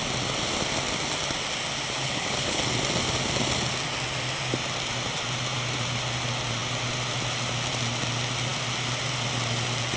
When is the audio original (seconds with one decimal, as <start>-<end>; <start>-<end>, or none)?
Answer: 0.0-2.0; 2.6-10.0